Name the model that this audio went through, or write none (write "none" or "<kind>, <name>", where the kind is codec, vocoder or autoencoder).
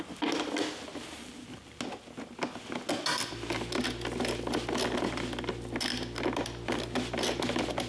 none